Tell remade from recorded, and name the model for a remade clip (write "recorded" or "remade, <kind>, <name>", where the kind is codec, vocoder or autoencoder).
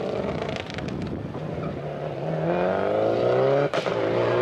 recorded